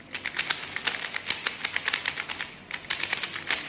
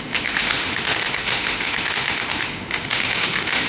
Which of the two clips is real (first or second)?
first